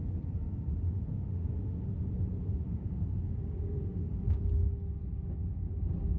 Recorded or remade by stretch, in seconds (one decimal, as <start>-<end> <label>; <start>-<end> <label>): 0.0-0.7 recorded; 0.7-4.4 remade; 4.4-6.2 recorded